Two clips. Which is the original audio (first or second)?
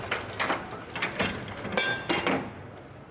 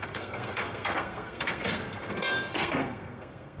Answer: first